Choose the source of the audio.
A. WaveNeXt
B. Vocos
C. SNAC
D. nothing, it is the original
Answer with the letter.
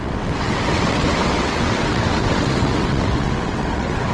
A